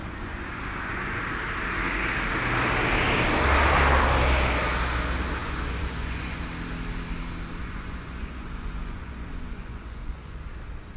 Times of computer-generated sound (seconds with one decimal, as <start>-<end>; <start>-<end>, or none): 0.0-1.2; 5.4-6.4; 7.6-10.4